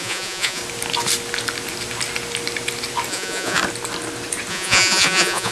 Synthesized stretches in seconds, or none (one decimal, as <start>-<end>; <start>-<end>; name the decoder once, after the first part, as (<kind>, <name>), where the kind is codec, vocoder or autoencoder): 0.0-0.6 (vocoder, Vocos); 3.1-3.6; 4.5-5.5